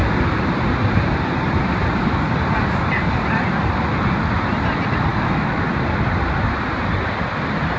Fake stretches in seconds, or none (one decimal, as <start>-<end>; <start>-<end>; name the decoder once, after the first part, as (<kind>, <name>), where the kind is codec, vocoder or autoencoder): 5.1-5.6 (autoencoder, DAC-VAE)

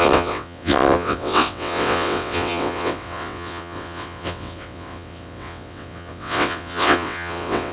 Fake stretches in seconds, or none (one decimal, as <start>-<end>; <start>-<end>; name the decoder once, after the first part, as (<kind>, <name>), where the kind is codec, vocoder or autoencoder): 0.0-7.7 (vocoder, WaveNeXt)

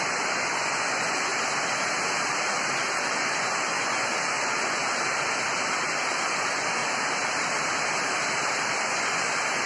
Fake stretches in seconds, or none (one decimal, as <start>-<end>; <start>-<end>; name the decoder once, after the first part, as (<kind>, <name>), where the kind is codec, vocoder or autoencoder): 0.0-1.3 (vocoder, Vocos); 2.9-4.8; 6.1-6.8; 8.8-9.7

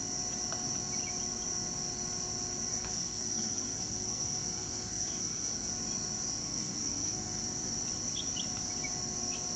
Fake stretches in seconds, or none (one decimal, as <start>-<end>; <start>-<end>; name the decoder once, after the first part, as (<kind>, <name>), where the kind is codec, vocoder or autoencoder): 2.7-5.7 (codec, SNAC); 6.4-7.4